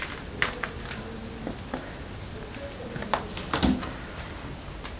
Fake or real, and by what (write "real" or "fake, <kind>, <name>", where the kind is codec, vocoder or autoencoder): real